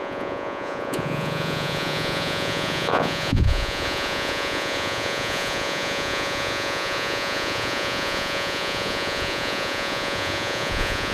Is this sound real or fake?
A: fake